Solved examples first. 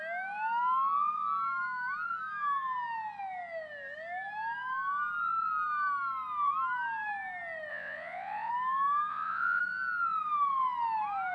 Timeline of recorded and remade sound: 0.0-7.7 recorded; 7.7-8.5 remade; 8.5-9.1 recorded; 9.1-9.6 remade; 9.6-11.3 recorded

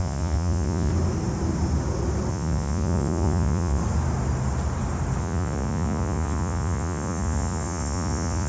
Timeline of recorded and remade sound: 0.0-0.9 remade; 0.9-2.3 recorded; 2.3-3.8 remade; 3.8-5.2 recorded; 5.2-8.5 remade

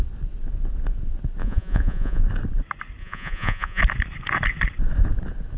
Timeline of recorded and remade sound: 0.0-1.4 recorded; 1.4-2.2 remade; 2.2-3.0 recorded; 3.0-3.8 remade; 3.8-5.6 recorded

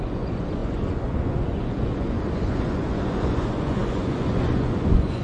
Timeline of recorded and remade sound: 0.0-5.2 remade